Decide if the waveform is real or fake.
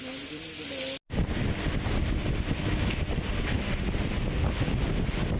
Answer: real